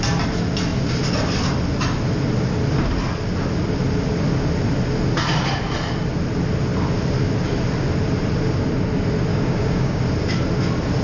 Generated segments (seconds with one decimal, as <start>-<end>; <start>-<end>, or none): 9.3-10.0